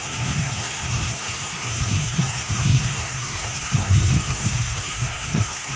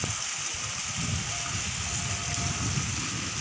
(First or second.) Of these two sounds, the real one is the second